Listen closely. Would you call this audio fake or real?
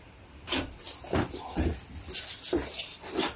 real